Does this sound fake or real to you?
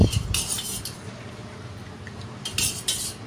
real